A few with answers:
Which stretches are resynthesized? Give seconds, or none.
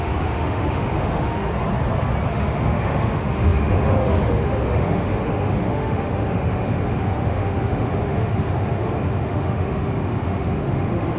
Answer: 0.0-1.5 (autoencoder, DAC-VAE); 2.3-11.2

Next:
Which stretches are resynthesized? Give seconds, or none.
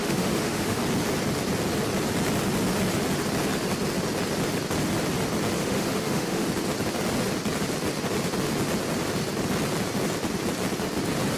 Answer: 0.0-0.8 (autoencoder, DAC-VAE); 5.6-6.5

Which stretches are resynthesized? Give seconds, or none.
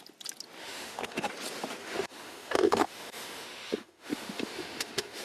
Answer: 0.6-1.3 (autoencoder, DAC-VAE); 1.8-5.2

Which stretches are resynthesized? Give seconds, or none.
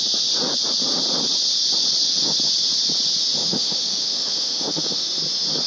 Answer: 3.4-5.2 (autoencoder, DAC-VAE)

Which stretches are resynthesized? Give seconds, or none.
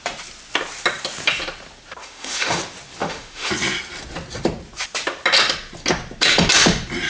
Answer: 2.0-2.6 (autoencoder, DAC-VAE); 3.0-3.5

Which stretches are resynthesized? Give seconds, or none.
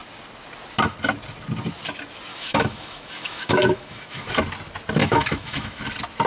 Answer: 2.3-4.3 (autoencoder, DAC-VAE); 5.0-5.8